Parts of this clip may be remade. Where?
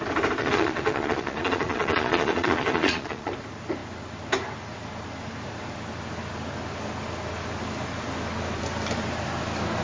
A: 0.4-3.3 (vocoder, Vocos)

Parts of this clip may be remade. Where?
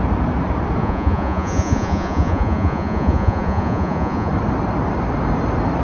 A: 0.8-4.3 (vocoder, Vocos)